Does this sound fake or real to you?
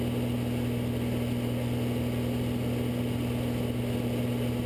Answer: real